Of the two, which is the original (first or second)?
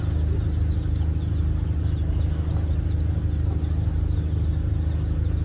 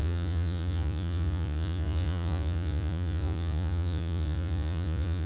first